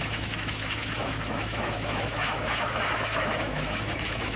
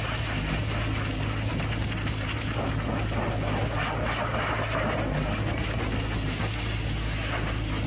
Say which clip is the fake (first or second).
first